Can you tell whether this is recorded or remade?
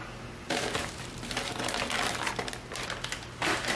recorded